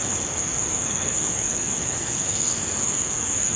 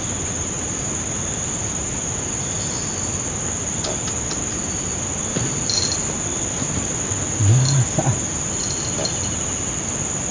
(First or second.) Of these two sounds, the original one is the second